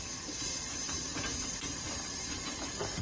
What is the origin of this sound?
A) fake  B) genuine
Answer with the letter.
B